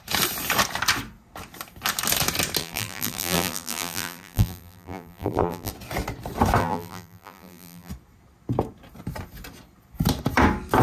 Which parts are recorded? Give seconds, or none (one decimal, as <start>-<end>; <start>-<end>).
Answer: 0.0-2.6; 5.7-6.6; 7.9-10.8